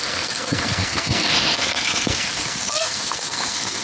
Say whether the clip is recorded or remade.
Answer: remade